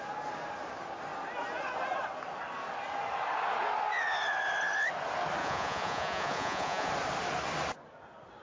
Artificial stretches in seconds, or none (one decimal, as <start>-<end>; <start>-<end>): 5.4-6.9